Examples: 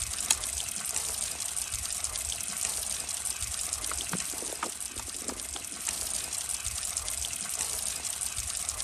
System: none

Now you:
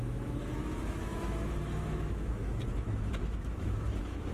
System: autoencoder, DAC-VAE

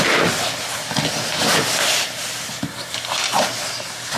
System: none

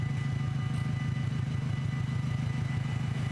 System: none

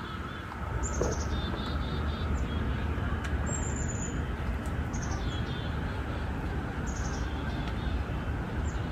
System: none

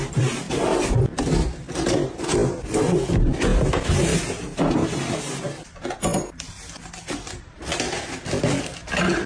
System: none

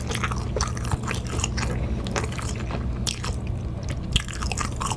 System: none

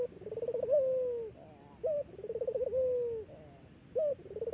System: none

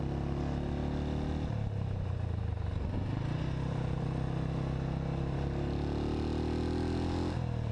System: none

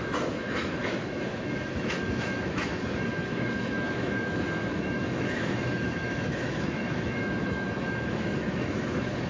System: autoencoder, DAC-VAE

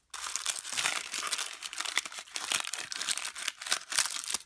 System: none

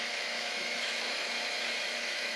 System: autoencoder, DAC-VAE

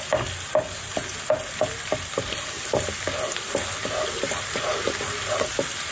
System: none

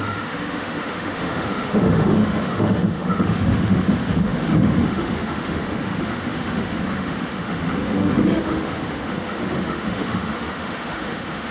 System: autoencoder, DAC-VAE